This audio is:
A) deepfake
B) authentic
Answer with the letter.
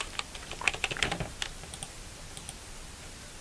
B